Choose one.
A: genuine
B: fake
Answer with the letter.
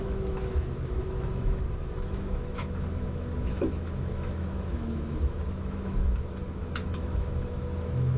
B